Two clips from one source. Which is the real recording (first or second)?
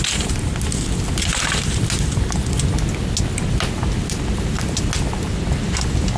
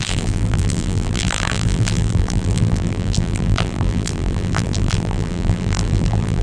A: first